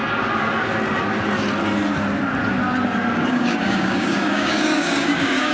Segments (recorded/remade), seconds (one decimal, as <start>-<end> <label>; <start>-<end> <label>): 0.0-3.3 recorded; 3.3-5.5 remade